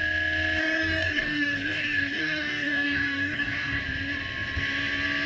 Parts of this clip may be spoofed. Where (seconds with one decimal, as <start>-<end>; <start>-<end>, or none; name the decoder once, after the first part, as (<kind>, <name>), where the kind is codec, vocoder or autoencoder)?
0.6-3.8 (codec, DAC)